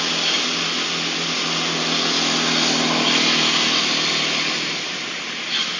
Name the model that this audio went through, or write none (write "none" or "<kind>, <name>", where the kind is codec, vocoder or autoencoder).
none